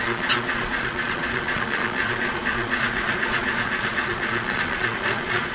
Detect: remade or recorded remade